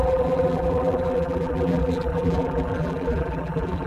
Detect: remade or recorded remade